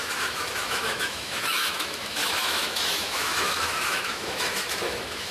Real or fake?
fake